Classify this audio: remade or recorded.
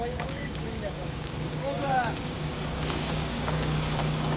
remade